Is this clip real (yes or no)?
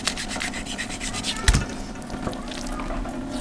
yes